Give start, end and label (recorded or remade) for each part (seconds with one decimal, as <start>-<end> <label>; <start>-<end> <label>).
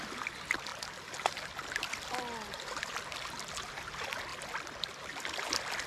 0.0-5.9 recorded